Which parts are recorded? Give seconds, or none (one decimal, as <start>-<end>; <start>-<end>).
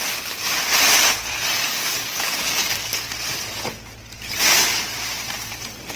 0.0-1.6; 3.0-6.0